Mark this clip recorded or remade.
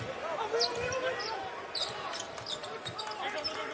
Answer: recorded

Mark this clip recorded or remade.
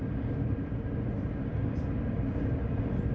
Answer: recorded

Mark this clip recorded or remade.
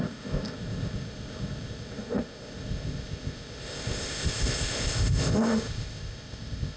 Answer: remade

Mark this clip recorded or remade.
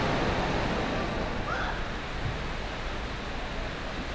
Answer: recorded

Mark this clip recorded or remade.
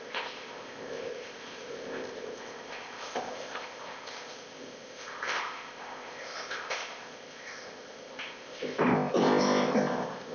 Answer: remade